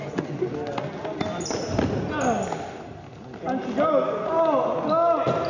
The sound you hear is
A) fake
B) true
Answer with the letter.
B